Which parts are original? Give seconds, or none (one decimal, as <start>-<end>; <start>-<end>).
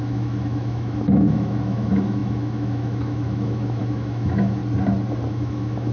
4.6-5.3